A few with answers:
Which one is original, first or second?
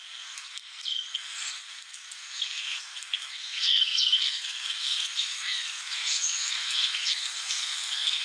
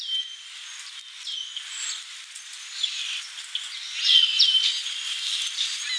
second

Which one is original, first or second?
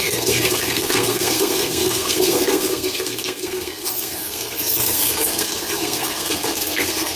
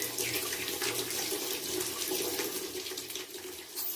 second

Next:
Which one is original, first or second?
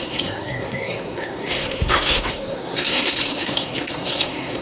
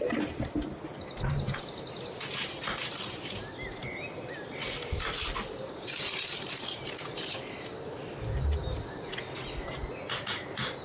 second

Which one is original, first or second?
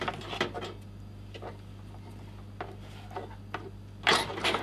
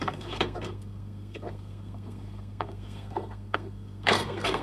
first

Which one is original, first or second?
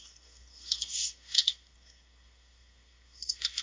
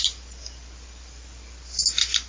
second